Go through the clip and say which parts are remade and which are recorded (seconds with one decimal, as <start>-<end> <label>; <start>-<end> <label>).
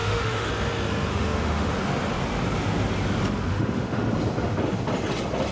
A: 0.0-0.5 remade; 0.5-1.1 recorded; 1.1-1.7 remade; 1.7-3.5 recorded; 3.5-4.0 remade; 4.0-5.5 recorded